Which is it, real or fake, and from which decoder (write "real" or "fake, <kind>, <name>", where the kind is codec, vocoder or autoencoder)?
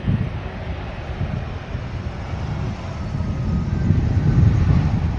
real